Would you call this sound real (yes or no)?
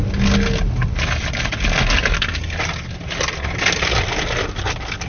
yes